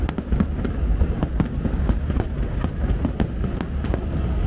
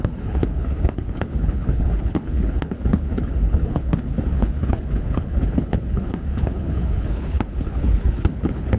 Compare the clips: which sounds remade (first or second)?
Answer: second